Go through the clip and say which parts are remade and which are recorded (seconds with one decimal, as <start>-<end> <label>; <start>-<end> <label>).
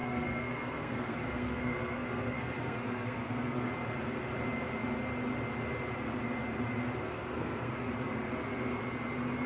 0.0-3.7 remade; 3.7-7.1 recorded; 7.1-7.7 remade; 7.7-9.5 recorded